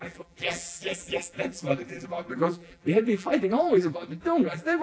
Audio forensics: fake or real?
fake